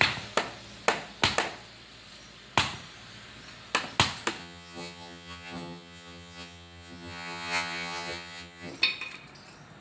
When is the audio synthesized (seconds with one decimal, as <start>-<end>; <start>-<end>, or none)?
4.4-8.7

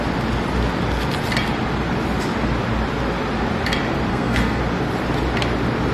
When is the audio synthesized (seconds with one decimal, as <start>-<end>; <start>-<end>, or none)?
4.1-4.6

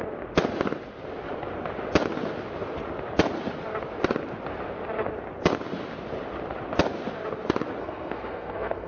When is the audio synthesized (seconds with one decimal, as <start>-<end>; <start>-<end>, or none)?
7.8-8.9

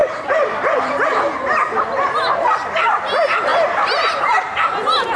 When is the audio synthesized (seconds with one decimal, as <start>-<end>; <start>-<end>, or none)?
0.0-0.9

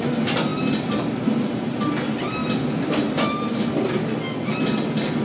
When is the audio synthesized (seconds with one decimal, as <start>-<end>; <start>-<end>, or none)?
none

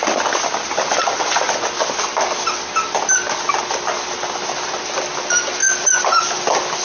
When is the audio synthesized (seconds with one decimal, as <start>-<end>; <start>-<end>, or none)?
none